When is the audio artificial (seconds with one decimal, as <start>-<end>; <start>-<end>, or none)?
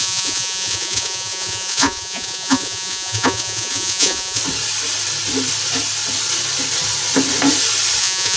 0.0-4.4; 8.0-8.4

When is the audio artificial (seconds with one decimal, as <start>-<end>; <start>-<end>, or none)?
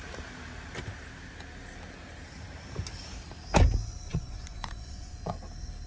4.1-5.3